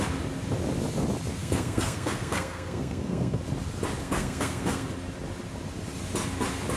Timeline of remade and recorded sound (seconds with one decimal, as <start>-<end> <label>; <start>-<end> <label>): 0.0-1.4 recorded; 1.4-3.4 remade; 3.4-4.0 recorded; 4.0-4.9 remade; 4.9-6.8 recorded

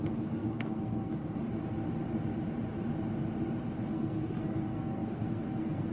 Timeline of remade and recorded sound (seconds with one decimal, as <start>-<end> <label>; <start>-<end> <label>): 0.0-1.2 remade; 1.2-3.9 recorded; 3.9-5.9 remade

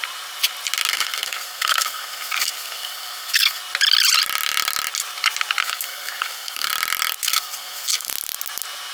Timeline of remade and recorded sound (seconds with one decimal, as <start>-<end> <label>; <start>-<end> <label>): 0.0-0.9 recorded; 0.9-3.6 remade; 3.6-5.6 recorded; 5.6-6.7 remade; 6.7-7.2 recorded; 7.2-8.1 remade; 8.1-8.9 recorded

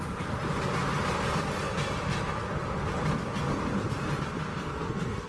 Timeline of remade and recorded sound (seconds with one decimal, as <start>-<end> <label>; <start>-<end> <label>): 0.0-4.5 recorded; 4.5-5.3 remade

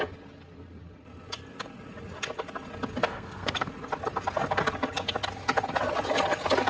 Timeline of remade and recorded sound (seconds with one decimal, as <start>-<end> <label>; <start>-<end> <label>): 0.0-3.0 recorded; 3.0-3.7 remade; 3.7-6.7 recorded

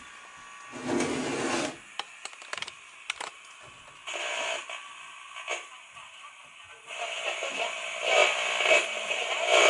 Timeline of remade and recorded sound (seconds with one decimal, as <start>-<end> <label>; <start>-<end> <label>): 0.0-9.7 recorded

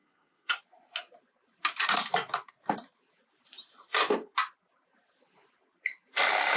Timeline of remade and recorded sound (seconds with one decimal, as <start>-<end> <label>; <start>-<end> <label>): 0.0-0.6 remade; 0.6-6.6 recorded

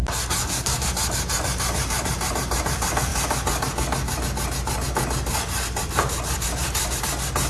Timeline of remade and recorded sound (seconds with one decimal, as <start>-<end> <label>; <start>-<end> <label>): 0.0-0.4 recorded; 0.4-0.9 remade; 0.9-7.5 recorded